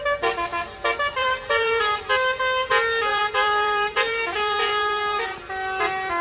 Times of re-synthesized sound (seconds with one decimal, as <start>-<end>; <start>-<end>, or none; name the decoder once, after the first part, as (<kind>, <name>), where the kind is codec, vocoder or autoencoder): 1.2-2.1 (vocoder, BigVGAN v2); 3.1-5.2